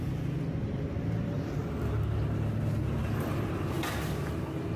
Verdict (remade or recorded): recorded